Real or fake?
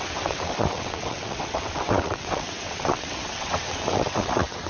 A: fake